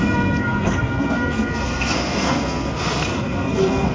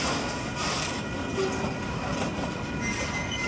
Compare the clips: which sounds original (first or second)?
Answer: second